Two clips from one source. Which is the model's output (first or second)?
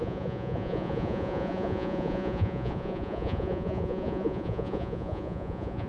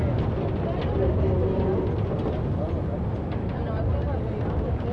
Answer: first